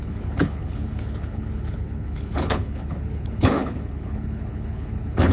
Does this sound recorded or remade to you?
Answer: remade